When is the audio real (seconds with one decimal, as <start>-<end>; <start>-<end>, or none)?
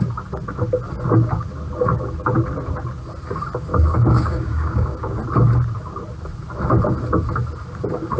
0.0-3.7; 5.2-8.2